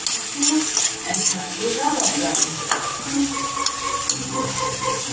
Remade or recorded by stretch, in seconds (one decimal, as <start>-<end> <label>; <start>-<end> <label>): 0.0-1.2 recorded; 1.2-2.6 remade; 2.6-5.1 recorded